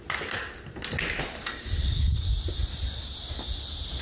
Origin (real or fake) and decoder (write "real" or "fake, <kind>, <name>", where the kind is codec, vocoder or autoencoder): real